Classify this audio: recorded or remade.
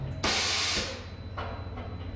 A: recorded